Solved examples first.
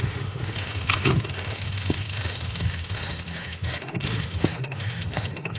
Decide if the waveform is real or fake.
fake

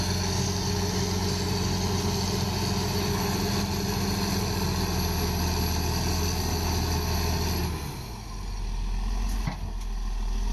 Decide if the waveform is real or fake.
real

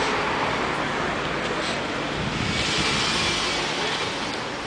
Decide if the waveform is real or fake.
real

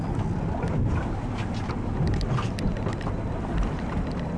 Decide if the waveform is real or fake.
real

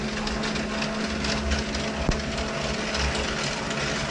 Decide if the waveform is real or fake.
real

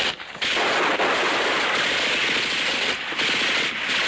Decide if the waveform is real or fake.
real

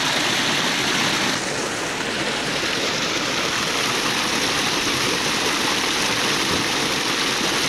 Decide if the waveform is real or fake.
real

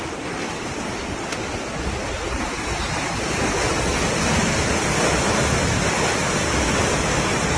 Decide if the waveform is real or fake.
real